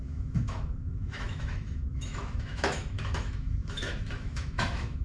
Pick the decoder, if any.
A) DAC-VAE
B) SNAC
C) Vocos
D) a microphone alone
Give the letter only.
A